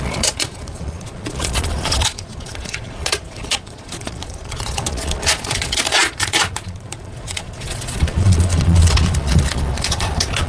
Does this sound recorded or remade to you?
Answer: remade